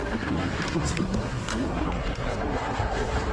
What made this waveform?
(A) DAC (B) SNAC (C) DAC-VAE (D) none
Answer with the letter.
B